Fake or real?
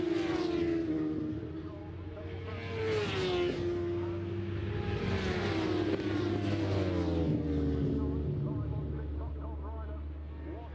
real